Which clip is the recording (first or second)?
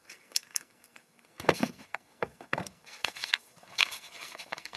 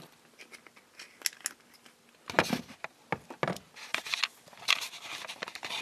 second